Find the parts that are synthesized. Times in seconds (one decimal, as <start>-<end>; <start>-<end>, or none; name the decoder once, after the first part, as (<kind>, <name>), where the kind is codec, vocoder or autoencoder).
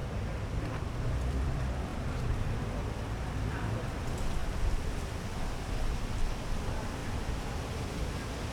0.8-7.0 (vocoder, BigVGAN v2); 7.9-8.5